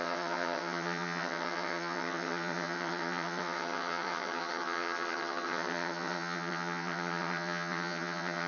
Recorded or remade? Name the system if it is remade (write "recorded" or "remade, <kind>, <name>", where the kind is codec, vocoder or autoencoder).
remade, vocoder, HiFi-GAN